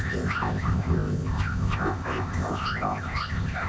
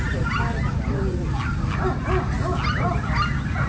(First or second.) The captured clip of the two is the second